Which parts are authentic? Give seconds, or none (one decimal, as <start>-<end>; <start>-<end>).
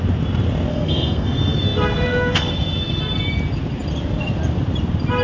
0.0-0.7; 3.0-5.2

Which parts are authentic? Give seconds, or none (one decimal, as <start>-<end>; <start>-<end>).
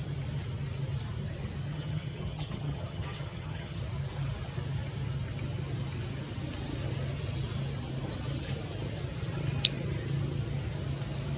0.0-1.7; 3.8-11.4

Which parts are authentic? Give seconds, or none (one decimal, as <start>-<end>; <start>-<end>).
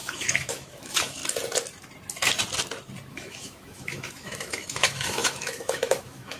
1.2-3.1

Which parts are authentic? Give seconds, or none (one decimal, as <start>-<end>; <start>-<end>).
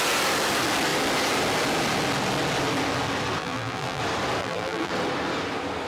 0.0-3.4; 4.0-4.4; 4.9-5.9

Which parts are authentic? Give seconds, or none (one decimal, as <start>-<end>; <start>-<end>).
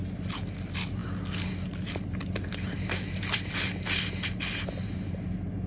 0.0-5.7